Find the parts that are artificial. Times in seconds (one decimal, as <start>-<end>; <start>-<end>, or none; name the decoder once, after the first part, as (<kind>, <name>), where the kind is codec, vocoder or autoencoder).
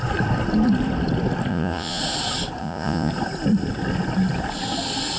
1.5-2.0 (vocoder, Vocos); 2.6-3.1